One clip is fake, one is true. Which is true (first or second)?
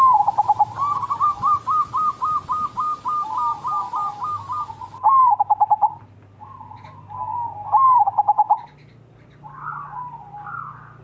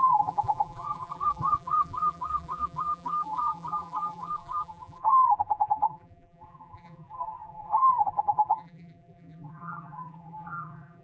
first